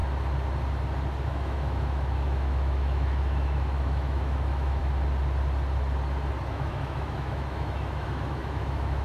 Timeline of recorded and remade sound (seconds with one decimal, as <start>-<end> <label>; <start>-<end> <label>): 0.0-1.3 recorded; 1.3-4.8 remade; 4.8-6.5 recorded; 6.5-9.0 remade